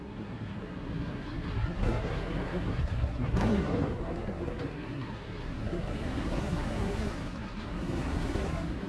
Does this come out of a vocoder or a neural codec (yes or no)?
yes